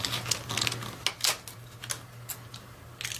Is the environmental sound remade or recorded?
recorded